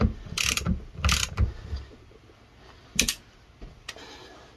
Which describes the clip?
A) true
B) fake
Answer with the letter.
A